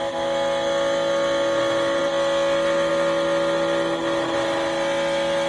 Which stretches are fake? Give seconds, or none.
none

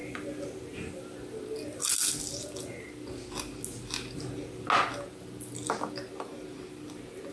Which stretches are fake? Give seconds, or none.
none

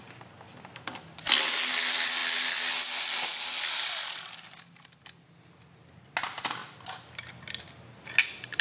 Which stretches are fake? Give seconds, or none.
none

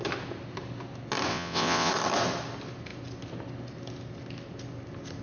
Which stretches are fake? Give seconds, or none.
1.3-1.9

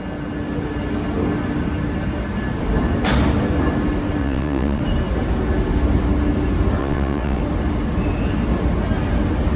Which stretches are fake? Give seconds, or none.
4.2-4.8; 6.8-7.4